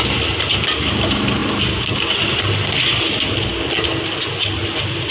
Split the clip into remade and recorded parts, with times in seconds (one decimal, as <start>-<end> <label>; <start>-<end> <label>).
0.0-5.1 recorded